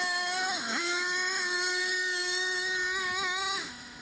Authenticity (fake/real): fake